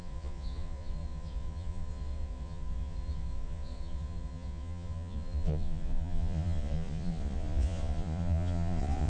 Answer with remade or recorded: remade